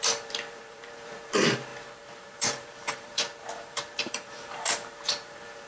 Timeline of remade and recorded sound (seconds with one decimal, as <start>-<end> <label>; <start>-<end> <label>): 0.0-5.7 remade